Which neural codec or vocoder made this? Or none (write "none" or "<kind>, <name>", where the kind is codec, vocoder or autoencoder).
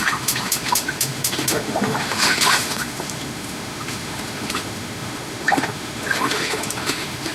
autoencoder, DAC-VAE